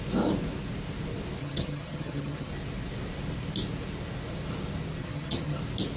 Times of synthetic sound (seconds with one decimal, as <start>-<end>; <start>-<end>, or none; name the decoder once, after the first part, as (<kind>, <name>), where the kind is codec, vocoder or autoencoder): 1.4-2.5 (vocoder, HiFi-GAN); 5.0-5.6